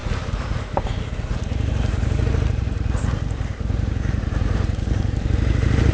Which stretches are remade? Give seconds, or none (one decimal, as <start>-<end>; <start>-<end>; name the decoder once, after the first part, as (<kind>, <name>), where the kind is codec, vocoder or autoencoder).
0.0-5.9 (vocoder, BigVGAN v2)